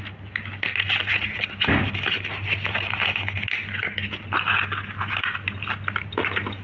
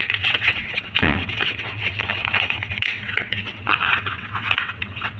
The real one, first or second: first